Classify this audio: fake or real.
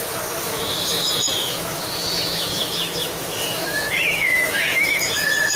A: fake